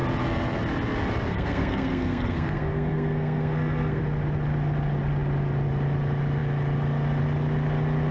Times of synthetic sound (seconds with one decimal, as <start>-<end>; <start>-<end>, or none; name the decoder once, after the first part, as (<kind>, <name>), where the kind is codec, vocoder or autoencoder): 1.3-4.0 (codec, SNAC)